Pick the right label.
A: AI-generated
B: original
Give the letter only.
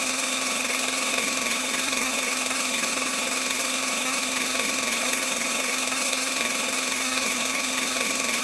A